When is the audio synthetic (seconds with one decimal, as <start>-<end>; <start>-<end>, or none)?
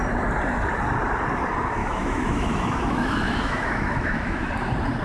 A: 1.8-4.5